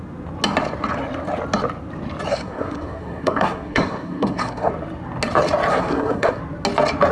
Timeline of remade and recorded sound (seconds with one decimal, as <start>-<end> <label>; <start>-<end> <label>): 0.0-2.3 recorded; 2.3-4.7 remade; 4.7-5.7 recorded; 5.7-6.4 remade; 6.4-7.1 recorded